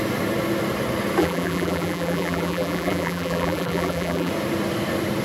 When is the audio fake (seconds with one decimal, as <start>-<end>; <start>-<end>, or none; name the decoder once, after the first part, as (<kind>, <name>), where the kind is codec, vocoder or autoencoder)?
1.2-4.3 (vocoder, BigVGAN v2)